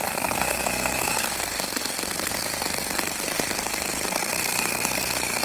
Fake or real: fake